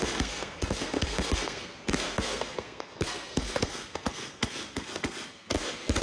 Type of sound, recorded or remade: remade